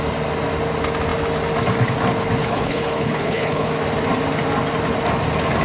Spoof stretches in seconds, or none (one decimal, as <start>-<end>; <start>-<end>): 2.4-3.7